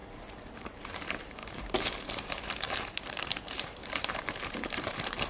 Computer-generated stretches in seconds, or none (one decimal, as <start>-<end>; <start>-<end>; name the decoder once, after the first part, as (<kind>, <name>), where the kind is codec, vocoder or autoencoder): 0.6-5.3 (vocoder, BigVGAN v2)